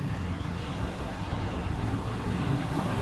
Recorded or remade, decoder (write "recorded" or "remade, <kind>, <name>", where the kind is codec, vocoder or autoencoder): remade, codec, SNAC